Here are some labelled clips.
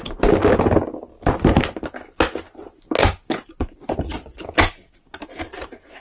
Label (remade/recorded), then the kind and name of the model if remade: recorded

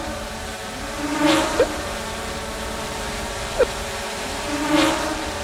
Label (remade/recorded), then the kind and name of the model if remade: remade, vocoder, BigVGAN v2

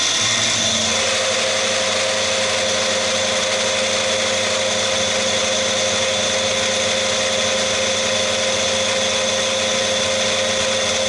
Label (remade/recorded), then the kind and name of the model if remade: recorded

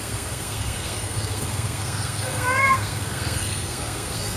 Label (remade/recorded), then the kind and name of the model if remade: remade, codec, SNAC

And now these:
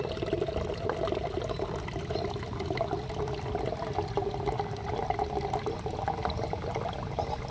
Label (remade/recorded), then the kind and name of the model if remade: recorded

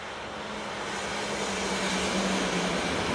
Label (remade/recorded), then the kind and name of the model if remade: recorded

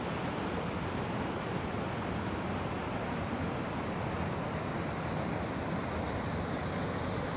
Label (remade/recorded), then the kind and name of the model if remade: recorded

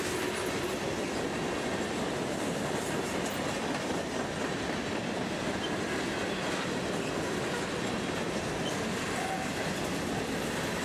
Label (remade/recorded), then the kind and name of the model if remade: recorded